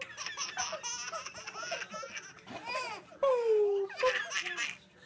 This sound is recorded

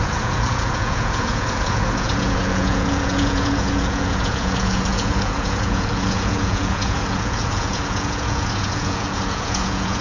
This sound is remade